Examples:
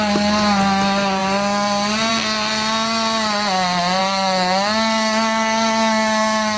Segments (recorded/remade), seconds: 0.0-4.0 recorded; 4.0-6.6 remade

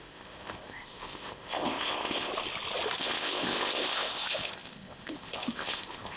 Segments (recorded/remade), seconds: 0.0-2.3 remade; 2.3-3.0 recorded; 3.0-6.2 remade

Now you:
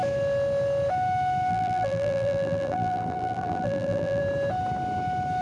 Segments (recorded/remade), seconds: 0.0-1.5 recorded; 1.5-4.2 remade; 4.2-5.4 recorded

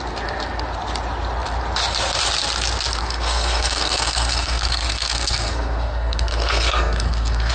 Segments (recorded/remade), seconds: 0.0-3.0 recorded; 3.0-7.5 remade

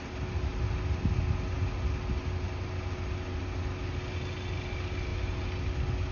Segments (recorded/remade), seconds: 0.0-6.1 recorded

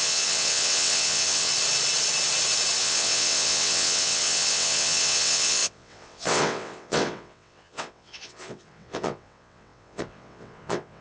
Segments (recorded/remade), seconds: 0.0-1.5 remade; 1.5-2.8 recorded; 2.8-11.0 remade